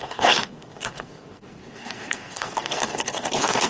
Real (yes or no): no